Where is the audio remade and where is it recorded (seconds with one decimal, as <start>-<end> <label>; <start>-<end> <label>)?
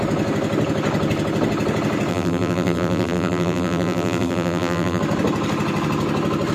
0.0-2.1 recorded; 2.1-5.0 remade; 5.0-6.5 recorded